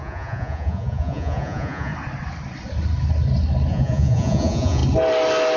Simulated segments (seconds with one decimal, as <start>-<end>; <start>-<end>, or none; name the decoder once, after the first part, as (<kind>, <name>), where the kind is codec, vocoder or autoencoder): 0.0-1.9 (vocoder, Vocos); 3.7-4.8